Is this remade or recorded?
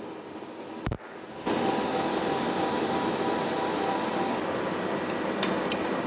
recorded